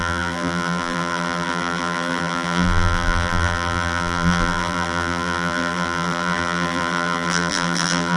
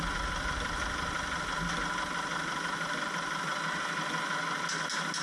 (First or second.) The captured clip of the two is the second